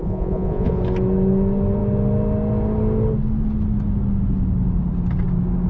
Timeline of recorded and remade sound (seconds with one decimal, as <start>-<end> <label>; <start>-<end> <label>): 0.0-0.8 remade; 0.8-5.7 recorded